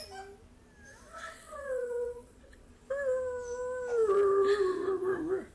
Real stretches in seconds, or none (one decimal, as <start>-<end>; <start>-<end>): 0.0-0.9; 2.7-5.5